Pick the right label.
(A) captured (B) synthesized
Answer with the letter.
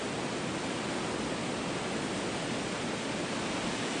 A